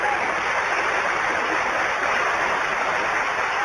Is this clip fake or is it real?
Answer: real